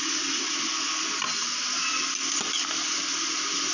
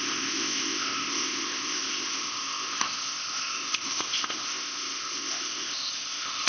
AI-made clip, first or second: second